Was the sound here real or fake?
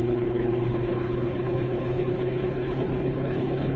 fake